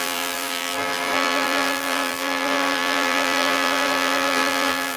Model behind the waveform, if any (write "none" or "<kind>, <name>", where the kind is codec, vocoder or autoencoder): vocoder, BigVGAN v2